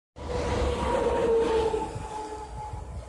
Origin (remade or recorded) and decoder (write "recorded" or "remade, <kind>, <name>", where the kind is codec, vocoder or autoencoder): recorded